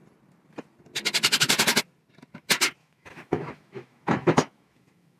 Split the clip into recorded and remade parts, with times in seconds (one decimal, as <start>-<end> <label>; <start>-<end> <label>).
0.0-2.8 recorded; 2.8-5.2 remade